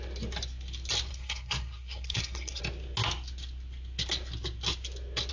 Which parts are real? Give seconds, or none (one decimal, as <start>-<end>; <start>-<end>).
0.0-1.1; 2.6-5.3